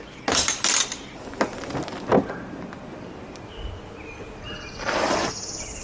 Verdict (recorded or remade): recorded